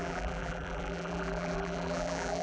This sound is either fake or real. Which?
fake